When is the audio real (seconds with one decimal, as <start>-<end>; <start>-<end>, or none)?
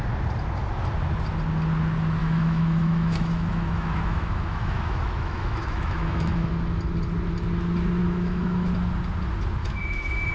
0.0-2.2; 6.5-8.0; 8.7-9.6